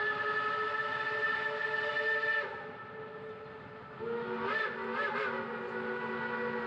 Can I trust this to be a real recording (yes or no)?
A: yes